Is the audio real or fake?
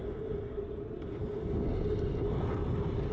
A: real